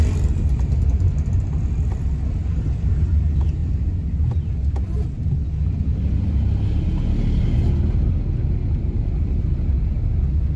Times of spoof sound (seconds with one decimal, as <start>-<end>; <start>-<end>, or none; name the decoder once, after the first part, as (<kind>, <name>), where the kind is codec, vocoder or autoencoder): none